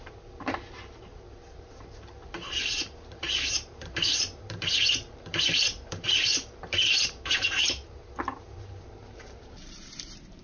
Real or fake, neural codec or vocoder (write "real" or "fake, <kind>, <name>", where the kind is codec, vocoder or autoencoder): fake, vocoder, BigVGAN v2